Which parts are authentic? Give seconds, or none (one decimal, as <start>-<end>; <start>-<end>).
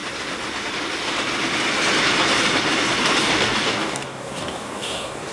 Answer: 0.0-3.2